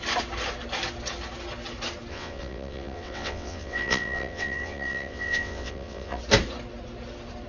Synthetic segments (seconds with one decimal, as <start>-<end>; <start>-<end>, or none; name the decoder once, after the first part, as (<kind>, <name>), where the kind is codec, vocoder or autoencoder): 2.1-6.2 (vocoder, WaveNeXt)